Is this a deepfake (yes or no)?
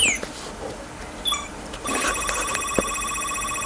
no